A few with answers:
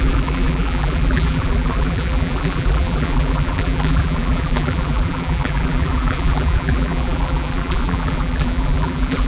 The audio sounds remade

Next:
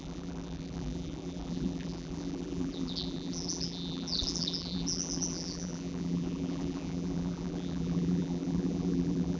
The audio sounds remade